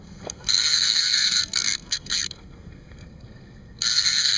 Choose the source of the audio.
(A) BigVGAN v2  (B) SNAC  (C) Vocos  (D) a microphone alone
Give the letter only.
B